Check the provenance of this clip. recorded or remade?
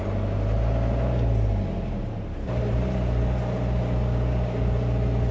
recorded